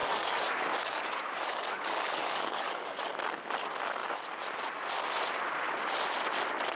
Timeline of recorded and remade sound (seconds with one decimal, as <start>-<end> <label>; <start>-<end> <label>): 0.0-3.0 remade; 3.0-6.8 recorded